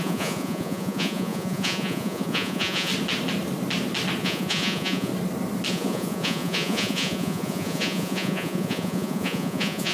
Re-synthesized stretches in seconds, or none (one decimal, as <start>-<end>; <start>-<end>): 0.0-2.9; 4.2-5.1; 5.7-9.9